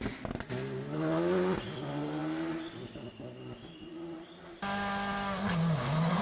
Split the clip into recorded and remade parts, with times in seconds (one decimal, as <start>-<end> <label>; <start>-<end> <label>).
0.0-6.2 recorded

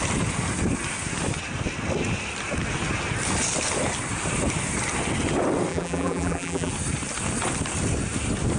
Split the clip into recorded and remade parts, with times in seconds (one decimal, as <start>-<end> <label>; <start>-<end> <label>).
0.0-5.7 recorded; 5.7-6.7 remade; 6.7-8.6 recorded